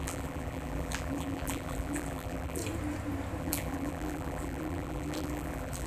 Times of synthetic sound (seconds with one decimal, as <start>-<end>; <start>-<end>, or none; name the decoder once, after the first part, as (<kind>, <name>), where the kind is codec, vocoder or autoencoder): 0.0-2.6 (vocoder, BigVGAN v2); 3.4-5.9

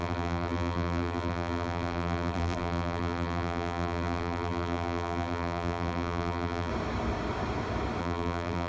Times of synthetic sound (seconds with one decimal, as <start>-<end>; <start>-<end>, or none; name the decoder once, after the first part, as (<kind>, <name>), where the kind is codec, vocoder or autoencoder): 0.0-6.7 (vocoder, BigVGAN v2); 8.0-8.7

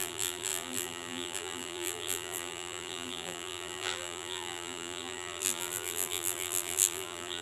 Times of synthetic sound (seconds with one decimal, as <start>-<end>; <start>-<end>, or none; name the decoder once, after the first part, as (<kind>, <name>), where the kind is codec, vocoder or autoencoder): 0.0-7.4 (vocoder, BigVGAN v2)

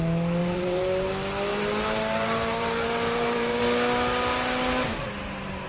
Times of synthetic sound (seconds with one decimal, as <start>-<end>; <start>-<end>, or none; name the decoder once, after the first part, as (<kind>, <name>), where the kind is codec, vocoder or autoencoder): 0.4-1.1 (vocoder, BigVGAN v2); 1.5-3.6

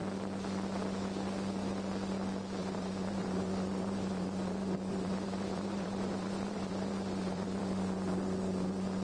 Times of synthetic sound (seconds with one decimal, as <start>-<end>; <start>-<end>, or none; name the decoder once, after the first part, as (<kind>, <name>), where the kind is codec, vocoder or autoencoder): 2.6-7.6 (vocoder, BigVGAN v2)

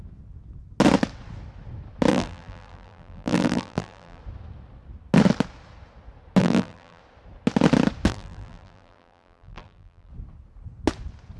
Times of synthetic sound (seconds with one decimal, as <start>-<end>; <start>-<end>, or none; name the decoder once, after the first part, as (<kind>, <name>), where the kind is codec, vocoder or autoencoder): 2.1-4.2 (vocoder, BigVGAN v2); 6.4-7.0; 8.1-10.1